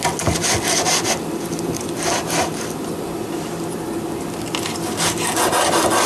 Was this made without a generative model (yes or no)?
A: yes